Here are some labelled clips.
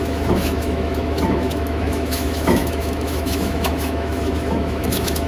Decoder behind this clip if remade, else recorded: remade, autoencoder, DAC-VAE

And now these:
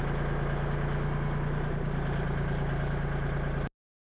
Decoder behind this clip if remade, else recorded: recorded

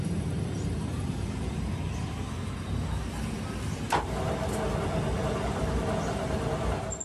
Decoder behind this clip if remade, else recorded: recorded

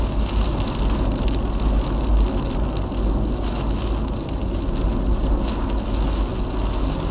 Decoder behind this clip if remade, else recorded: recorded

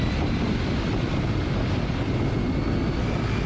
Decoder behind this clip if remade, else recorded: recorded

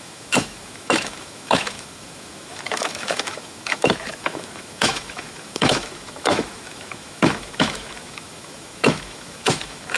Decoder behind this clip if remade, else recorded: remade, autoencoder, DAC-VAE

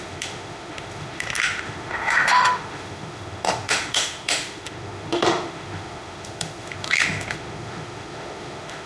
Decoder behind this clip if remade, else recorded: remade, autoencoder, DAC-VAE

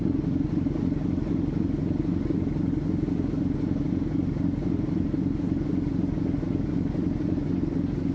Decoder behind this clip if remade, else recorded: recorded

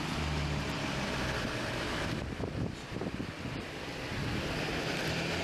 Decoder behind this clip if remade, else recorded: recorded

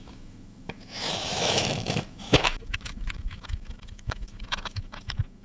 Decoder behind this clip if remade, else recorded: remade, autoencoder, DAC-VAE